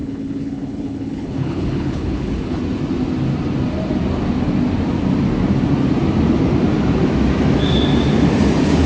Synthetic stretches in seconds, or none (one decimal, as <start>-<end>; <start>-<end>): 0.0-2.6